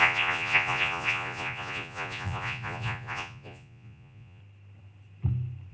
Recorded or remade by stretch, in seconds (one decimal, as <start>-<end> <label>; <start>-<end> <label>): 0.0-4.4 remade; 4.4-5.7 recorded